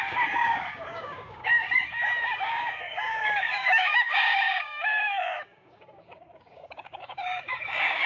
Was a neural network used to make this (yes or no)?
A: yes